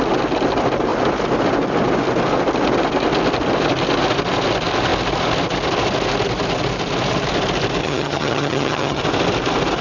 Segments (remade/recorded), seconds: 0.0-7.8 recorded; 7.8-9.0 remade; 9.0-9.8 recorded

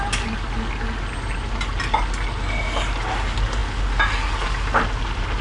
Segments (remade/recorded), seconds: 0.0-5.4 recorded